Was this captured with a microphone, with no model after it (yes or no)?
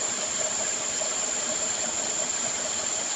no